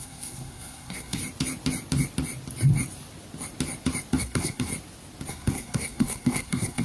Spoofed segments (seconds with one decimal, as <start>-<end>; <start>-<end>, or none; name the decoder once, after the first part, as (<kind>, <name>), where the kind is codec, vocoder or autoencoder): 0.0-1.2 (codec, SNAC); 4.2-4.7; 5.3-6.8